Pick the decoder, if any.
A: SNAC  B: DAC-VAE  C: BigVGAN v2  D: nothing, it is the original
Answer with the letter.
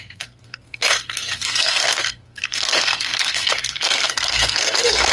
A